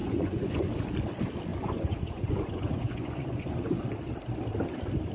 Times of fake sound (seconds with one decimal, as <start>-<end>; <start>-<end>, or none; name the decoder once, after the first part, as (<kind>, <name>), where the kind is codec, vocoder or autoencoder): 0.0-0.7 (vocoder, Vocos); 1.5-3.8